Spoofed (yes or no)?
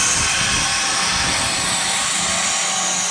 no